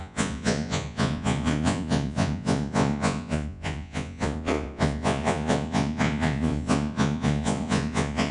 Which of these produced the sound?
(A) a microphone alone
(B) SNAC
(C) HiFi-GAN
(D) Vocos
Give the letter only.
D